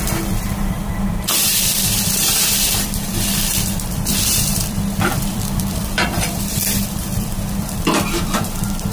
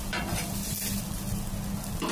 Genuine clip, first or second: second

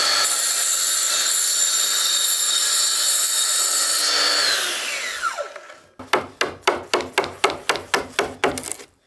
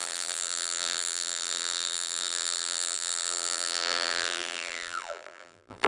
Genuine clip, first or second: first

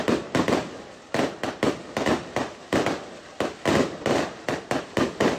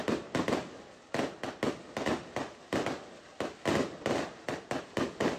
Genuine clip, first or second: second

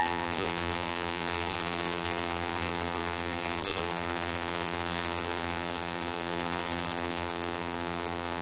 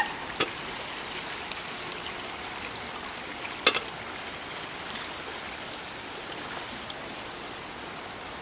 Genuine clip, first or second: second